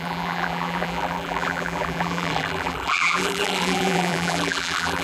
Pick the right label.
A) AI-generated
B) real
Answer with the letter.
A